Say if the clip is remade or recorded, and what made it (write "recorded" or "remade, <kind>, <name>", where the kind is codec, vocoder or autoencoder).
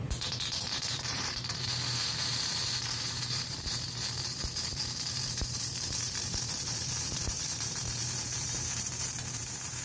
remade, vocoder, BigVGAN v2